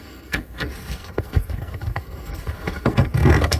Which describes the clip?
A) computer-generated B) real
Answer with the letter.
A